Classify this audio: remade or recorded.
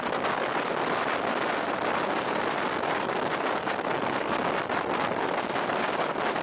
recorded